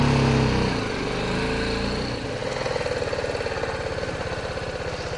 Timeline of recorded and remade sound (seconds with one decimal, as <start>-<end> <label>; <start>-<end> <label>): 0.0-5.2 recorded

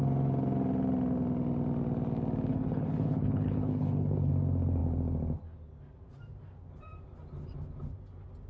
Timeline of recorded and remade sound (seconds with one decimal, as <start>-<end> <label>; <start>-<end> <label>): 0.0-2.5 recorded; 2.5-4.3 remade; 4.3-8.5 recorded

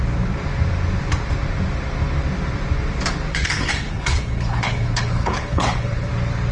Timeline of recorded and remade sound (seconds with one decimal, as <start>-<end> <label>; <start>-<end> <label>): 0.0-3.3 recorded; 3.3-6.1 remade; 6.1-6.5 recorded

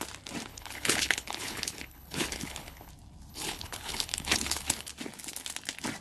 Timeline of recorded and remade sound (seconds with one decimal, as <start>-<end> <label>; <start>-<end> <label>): 0.0-0.5 recorded; 0.5-2.9 remade; 2.9-3.3 recorded; 3.3-4.9 remade; 4.9-6.0 recorded

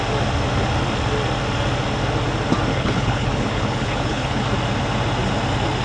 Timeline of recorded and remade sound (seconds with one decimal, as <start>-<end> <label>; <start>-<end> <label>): 0.0-2.7 recorded; 2.7-4.4 remade; 4.4-5.8 recorded

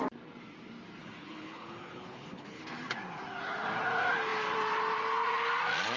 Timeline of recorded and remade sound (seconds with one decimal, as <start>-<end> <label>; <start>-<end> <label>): 0.0-1.0 recorded; 1.0-2.6 remade; 2.6-6.0 recorded

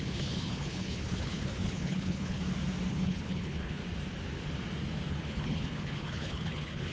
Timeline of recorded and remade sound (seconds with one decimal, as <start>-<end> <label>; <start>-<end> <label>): 0.0-2.4 remade; 2.4-2.9 recorded; 2.9-3.8 remade; 3.8-5.1 recorded; 5.1-6.9 remade

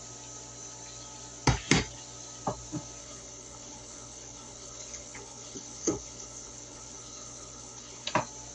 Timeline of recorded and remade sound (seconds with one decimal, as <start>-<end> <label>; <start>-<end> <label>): 0.0-3.0 recorded; 3.0-8.1 remade; 8.1-8.5 recorded